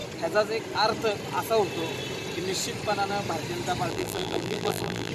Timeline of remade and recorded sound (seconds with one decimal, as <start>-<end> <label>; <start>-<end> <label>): 0.0-3.9 recorded; 3.9-5.1 remade

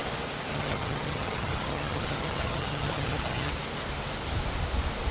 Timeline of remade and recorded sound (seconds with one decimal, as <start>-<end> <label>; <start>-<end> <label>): 0.0-0.5 recorded; 0.5-3.5 remade; 3.5-5.1 recorded

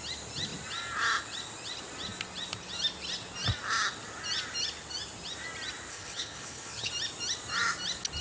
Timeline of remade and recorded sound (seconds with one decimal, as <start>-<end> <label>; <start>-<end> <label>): 0.0-5.9 recorded; 5.9-6.9 remade; 6.9-8.2 recorded

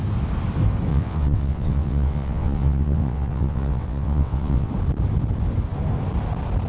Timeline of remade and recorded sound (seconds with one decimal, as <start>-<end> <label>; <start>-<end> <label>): 0.0-0.9 recorded; 0.9-4.7 remade; 4.7-6.7 recorded